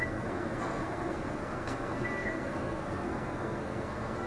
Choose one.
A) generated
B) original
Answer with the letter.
A